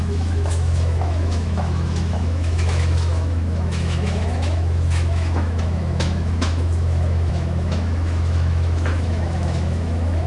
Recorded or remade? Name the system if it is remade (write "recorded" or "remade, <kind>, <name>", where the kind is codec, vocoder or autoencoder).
remade, autoencoder, DAC-VAE